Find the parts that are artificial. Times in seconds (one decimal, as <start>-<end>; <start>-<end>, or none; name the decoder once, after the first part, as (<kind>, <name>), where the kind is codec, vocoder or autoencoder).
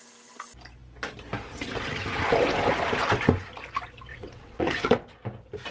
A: 4.1-4.9 (vocoder, WaveNeXt)